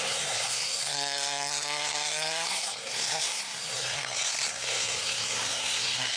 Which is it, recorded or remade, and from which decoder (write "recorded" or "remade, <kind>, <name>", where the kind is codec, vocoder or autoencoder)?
remade, codec, SNAC